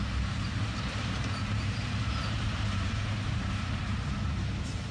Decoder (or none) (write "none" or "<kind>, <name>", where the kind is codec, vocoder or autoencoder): vocoder, BigVGAN v2